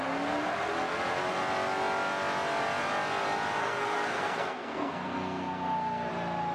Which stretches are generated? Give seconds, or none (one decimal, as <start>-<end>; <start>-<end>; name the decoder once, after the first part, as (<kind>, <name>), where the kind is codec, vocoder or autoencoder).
3.6-6.1 (codec, SNAC)